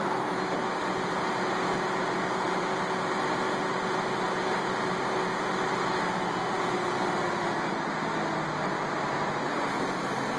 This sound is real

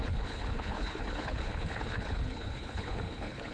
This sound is fake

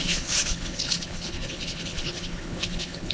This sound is fake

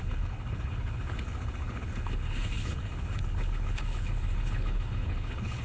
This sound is fake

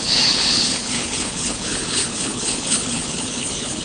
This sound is fake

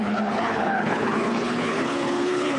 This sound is fake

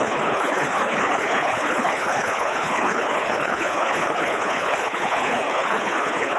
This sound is fake